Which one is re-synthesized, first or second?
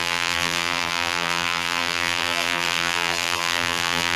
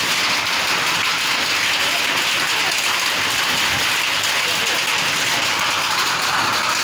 first